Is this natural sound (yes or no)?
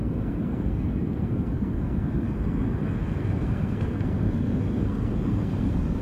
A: no